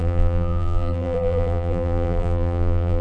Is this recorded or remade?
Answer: remade